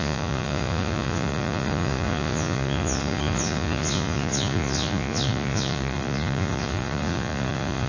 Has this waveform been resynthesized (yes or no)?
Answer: yes